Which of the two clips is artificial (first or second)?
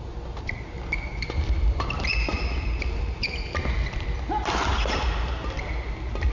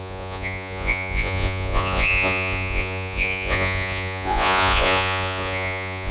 second